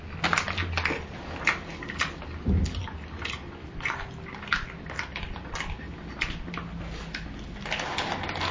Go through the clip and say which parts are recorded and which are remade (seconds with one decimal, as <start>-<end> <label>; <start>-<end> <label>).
0.0-2.8 recorded; 2.8-6.8 remade; 6.8-8.5 recorded